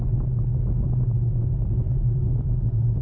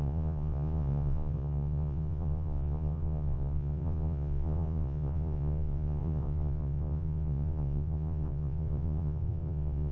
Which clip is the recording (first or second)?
first